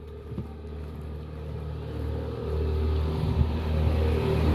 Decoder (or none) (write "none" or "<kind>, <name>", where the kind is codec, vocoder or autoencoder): none